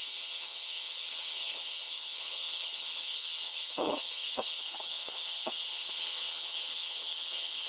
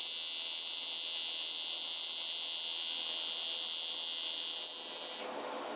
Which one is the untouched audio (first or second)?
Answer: second